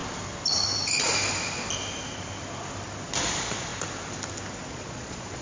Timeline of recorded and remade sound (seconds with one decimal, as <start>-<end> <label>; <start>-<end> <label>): 0.0-3.2 recorded; 3.2-3.7 remade; 3.7-4.7 recorded; 4.7-5.4 remade